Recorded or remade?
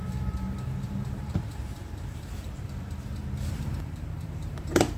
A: remade